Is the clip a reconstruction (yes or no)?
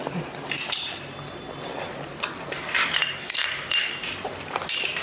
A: no